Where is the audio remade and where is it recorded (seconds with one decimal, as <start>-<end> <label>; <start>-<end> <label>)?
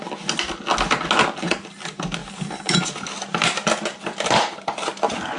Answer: 0.0-5.4 recorded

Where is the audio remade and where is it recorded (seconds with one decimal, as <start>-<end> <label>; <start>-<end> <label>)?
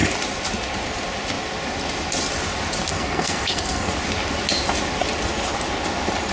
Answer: 0.0-2.9 recorded; 2.9-3.9 remade; 3.9-6.3 recorded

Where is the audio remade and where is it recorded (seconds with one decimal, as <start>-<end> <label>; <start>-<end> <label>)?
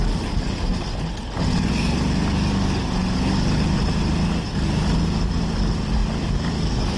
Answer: 0.0-7.0 recorded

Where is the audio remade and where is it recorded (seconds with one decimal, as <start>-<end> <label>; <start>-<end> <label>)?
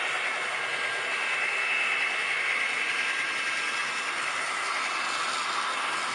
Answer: 0.0-6.1 recorded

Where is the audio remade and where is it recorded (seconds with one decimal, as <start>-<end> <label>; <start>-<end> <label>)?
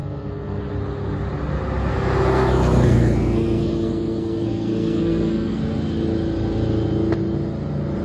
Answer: 0.0-0.6 remade; 0.6-1.9 recorded; 1.9-5.6 remade; 5.6-8.0 recorded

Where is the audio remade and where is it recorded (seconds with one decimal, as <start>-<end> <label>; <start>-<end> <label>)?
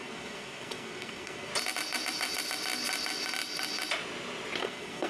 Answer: 0.0-1.5 remade; 1.5-4.6 recorded; 4.6-5.1 remade